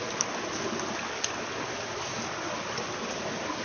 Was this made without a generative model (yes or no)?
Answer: yes